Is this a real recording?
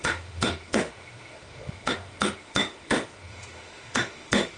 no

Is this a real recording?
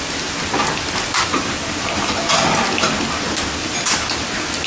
yes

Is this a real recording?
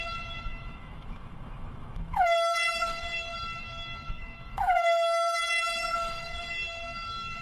no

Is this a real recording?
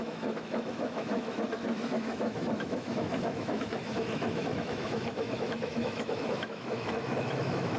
no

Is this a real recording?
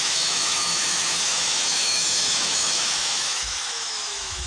no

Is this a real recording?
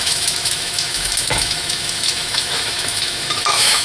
no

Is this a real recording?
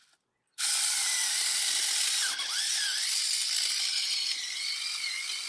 yes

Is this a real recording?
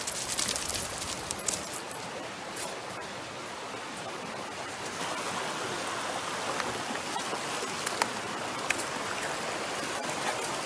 yes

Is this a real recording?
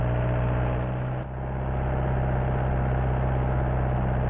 yes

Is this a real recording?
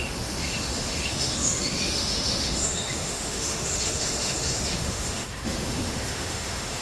no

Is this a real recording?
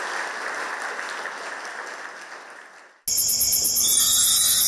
yes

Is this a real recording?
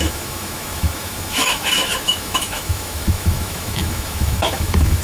no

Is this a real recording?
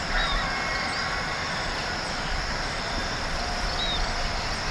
yes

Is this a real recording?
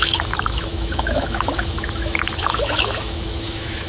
no